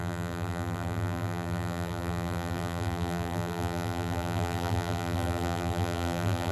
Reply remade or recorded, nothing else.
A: remade